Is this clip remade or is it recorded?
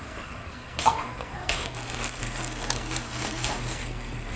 remade